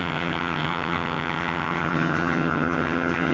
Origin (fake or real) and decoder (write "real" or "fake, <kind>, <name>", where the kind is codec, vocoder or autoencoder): fake, vocoder, HiFi-GAN